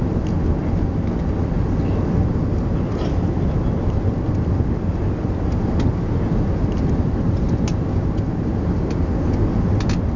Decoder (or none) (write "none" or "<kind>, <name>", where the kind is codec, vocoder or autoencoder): none